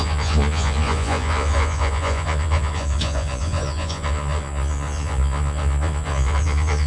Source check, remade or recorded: remade